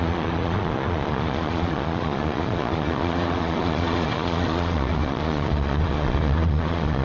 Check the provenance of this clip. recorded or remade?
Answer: remade